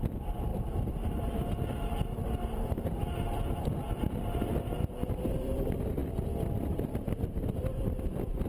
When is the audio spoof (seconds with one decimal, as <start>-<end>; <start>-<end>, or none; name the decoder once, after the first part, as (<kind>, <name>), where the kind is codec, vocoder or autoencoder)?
0.0-4.5 (vocoder, BigVGAN v2); 5.2-8.5